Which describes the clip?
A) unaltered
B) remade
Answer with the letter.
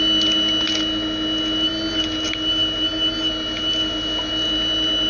A